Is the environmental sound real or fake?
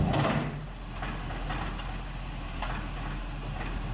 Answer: real